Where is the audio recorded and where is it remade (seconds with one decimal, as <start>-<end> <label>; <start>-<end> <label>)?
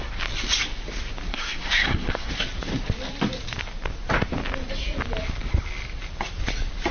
0.0-1.3 recorded; 1.3-2.3 remade; 2.3-6.9 recorded